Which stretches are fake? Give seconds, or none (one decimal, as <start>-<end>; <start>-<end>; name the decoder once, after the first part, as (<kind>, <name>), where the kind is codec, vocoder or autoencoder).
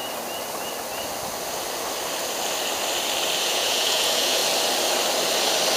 3.4-4.4 (vocoder, Vocos)